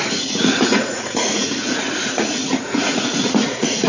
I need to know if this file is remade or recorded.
remade